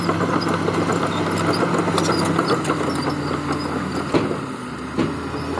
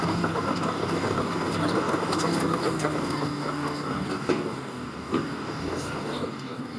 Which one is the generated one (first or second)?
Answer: second